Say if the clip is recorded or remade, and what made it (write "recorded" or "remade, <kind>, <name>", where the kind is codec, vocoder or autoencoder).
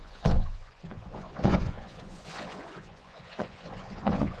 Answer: remade, vocoder, Vocos